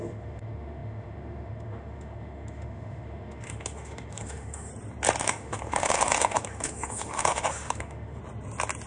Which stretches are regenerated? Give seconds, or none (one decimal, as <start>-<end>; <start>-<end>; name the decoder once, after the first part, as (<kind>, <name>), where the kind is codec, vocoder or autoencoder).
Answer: 0.0-4.7 (autoencoder, DAC-VAE); 5.2-8.2